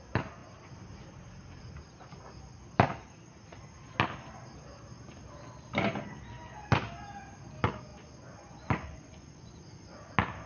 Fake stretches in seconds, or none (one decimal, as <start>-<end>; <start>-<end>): 7.9-10.1

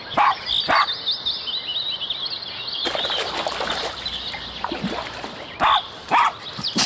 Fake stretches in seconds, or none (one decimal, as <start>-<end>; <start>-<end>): none

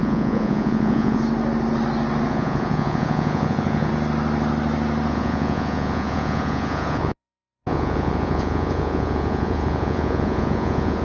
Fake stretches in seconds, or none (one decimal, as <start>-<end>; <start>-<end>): 0.0-1.2; 2.3-3.9; 5.1-11.0